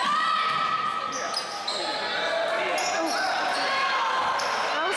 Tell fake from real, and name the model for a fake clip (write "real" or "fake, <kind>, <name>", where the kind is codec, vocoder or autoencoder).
real